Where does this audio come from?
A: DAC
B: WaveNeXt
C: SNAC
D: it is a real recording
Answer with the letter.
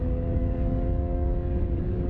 A